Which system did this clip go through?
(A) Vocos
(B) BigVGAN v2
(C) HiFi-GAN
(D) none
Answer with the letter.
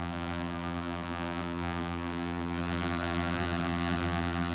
B